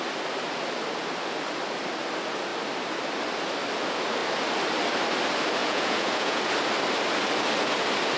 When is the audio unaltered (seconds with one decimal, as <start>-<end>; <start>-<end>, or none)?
0.0-5.6; 6.4-8.2